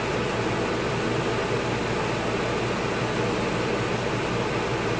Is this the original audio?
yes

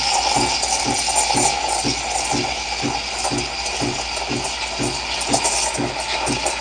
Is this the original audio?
yes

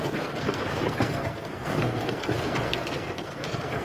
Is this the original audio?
no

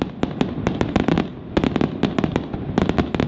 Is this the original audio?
yes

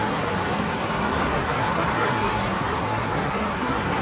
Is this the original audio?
no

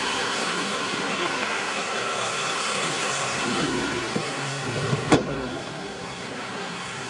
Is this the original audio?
no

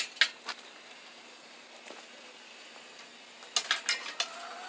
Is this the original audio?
yes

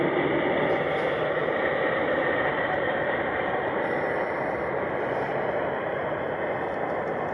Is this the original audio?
yes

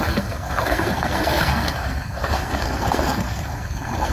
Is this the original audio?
no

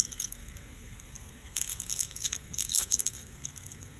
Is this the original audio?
no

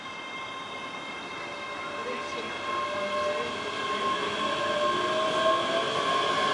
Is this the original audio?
yes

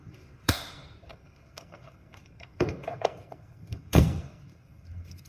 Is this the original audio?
no